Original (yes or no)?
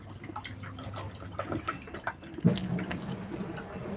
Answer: yes